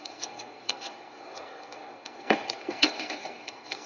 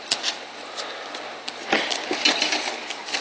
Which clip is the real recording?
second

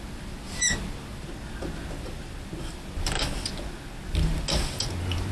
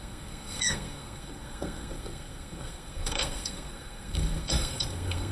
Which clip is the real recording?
first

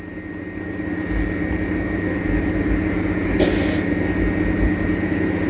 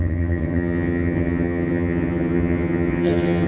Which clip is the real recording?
first